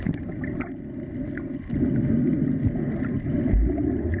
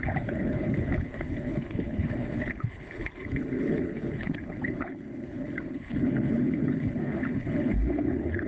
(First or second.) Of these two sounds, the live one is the first